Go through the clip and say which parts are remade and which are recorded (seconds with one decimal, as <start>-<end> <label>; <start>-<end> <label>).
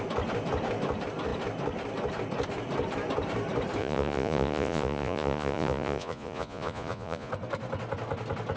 0.0-3.8 recorded; 3.8-7.3 remade; 7.3-8.6 recorded